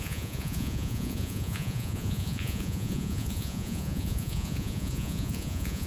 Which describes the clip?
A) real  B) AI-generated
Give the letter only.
B